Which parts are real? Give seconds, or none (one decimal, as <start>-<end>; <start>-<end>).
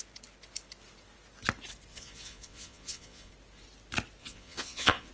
0.0-1.9; 3.3-4.2